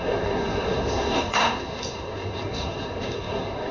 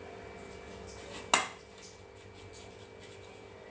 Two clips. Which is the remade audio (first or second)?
first